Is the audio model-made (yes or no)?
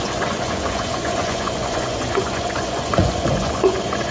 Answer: yes